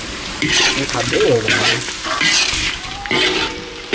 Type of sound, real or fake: fake